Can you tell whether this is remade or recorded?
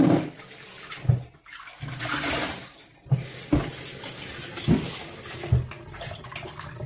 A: recorded